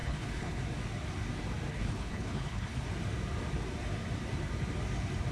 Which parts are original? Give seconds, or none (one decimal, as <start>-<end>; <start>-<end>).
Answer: 0.6-1.7; 2.8-5.3